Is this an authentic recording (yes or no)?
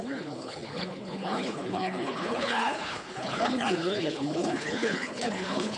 no